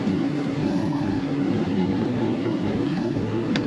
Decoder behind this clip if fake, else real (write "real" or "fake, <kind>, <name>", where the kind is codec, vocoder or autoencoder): fake, codec, SNAC